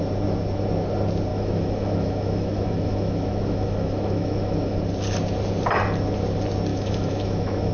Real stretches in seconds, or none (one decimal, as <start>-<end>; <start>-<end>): 0.0-1.3; 4.8-6.7